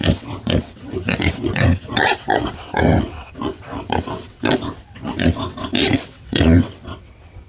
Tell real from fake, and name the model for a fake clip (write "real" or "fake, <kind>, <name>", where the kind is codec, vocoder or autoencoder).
fake, vocoder, WaveNeXt